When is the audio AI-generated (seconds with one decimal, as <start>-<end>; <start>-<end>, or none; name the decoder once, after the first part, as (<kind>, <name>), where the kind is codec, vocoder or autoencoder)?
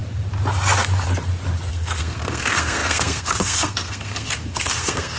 1.7-5.2 (codec, SNAC)